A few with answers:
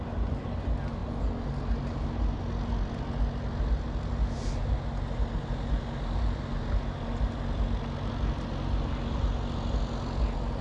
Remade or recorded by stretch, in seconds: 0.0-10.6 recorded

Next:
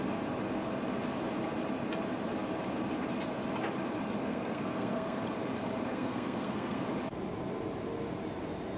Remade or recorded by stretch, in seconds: 0.0-4.2 recorded; 4.2-5.2 remade; 5.2-5.9 recorded; 5.9-6.8 remade; 6.8-8.8 recorded

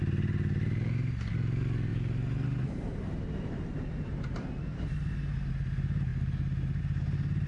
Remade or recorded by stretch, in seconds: 0.0-7.5 recorded